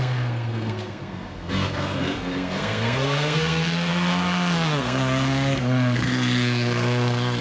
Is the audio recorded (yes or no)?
no